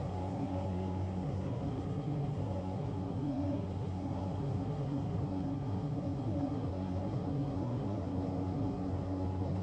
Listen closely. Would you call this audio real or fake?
fake